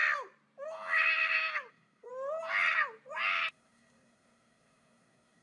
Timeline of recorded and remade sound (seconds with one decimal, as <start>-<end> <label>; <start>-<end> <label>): 0.0-1.7 recorded; 1.7-2.1 remade; 2.1-3.5 recorded; 3.5-5.4 remade